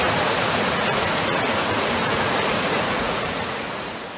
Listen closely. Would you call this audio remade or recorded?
remade